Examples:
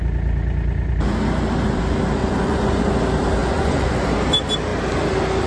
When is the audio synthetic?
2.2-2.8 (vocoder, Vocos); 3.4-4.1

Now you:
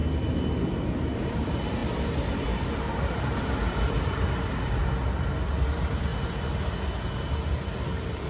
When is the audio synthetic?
1.2-1.8 (vocoder, BigVGAN v2); 2.3-4.8; 5.5-6.1; 7.3-8.3